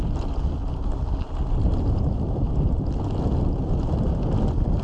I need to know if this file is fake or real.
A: real